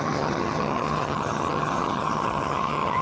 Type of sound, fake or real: fake